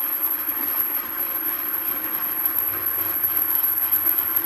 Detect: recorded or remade remade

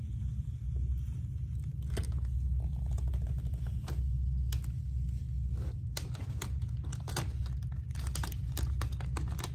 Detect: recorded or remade recorded